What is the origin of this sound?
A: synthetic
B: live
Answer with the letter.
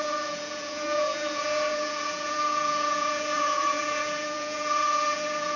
A